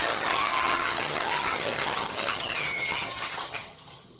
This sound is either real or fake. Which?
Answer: fake